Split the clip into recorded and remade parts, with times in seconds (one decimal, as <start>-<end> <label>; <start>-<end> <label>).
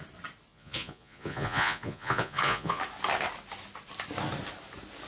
0.0-0.5 recorded; 0.5-2.8 remade; 2.8-5.1 recorded